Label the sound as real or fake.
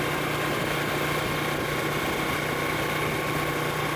real